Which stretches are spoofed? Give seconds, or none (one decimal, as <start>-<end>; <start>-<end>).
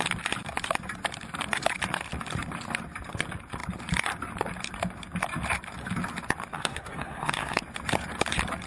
6.5-7.6